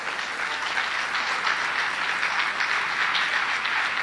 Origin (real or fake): real